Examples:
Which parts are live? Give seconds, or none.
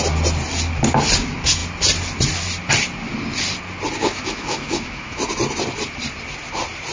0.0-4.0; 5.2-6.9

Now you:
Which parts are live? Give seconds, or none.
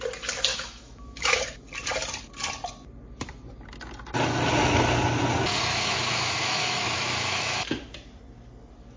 0.0-0.5; 1.4-5.7; 7.6-9.0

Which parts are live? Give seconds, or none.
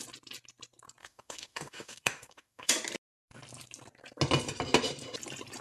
0.0-1.0; 2.7-5.6